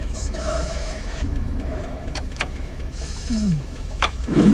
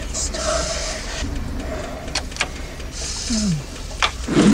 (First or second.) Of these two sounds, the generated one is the first